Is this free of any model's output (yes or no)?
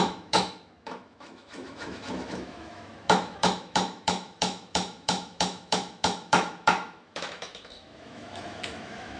no